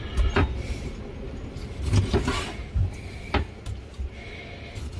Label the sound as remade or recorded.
recorded